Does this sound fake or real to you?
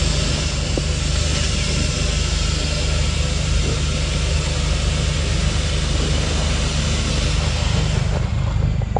real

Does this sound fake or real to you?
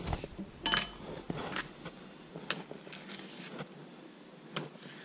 real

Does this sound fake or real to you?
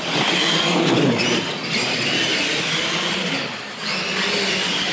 real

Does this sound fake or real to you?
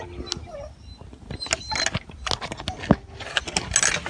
real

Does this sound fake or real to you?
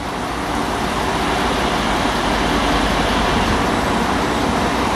real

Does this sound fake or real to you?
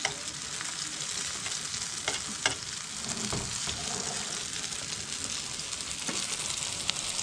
real